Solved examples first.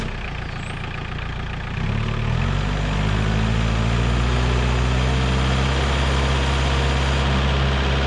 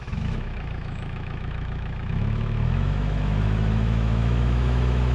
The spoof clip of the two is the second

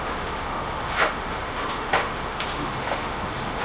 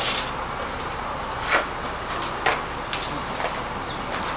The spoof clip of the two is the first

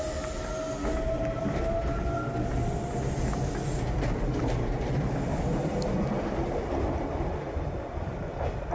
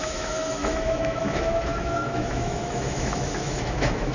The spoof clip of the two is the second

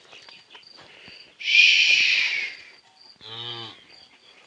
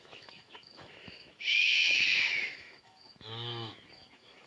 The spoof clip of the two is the second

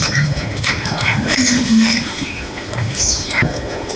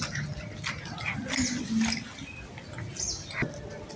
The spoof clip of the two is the first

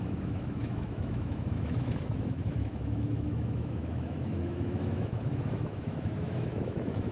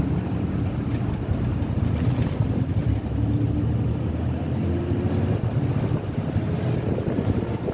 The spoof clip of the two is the first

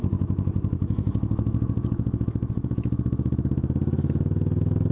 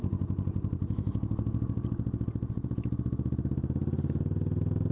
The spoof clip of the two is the first